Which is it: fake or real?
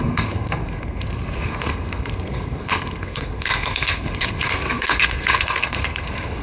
fake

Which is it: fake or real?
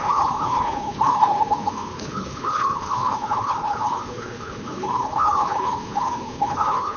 fake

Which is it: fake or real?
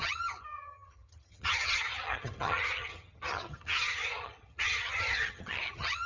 fake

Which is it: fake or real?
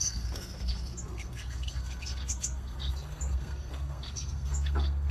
fake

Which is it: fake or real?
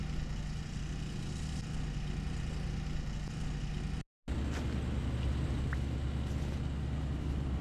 real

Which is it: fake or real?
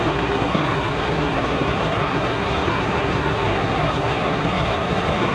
fake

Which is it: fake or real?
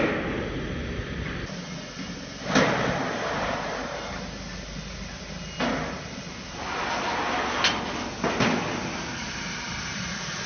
real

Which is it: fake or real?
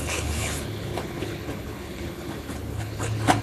fake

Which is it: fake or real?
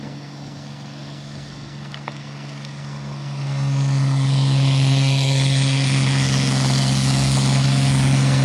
fake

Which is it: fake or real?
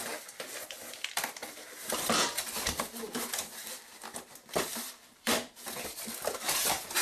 fake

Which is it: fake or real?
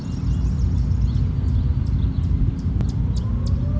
real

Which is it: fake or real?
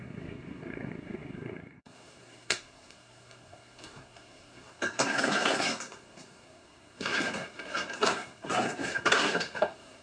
fake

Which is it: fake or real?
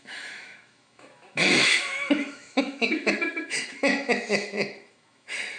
fake